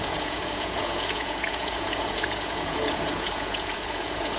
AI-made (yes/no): yes